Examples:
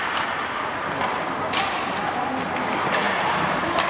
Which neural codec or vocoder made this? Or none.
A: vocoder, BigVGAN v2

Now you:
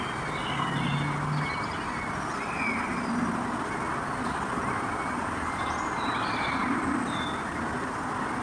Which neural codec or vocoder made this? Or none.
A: none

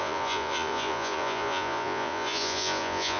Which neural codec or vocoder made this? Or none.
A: vocoder, Vocos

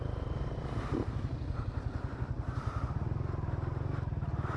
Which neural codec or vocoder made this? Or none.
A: vocoder, BigVGAN v2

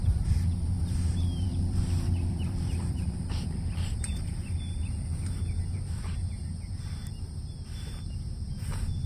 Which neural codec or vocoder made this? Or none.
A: vocoder, BigVGAN v2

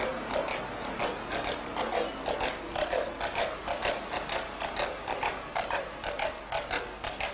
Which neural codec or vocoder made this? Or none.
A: none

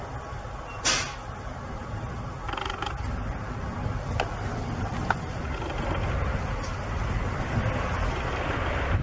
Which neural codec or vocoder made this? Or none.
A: none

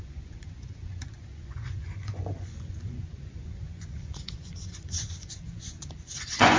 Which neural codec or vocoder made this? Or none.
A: vocoder, Vocos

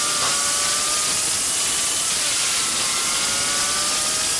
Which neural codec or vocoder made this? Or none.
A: none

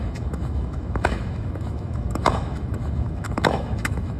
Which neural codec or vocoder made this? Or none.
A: autoencoder, DAC-VAE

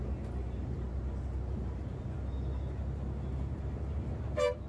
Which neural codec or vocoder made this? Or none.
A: none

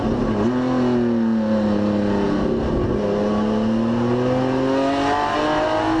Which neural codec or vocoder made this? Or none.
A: none